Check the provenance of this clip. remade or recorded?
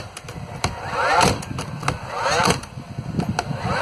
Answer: recorded